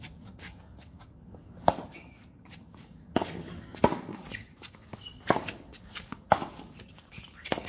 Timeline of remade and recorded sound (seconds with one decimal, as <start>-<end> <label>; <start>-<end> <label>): 0.0-7.7 remade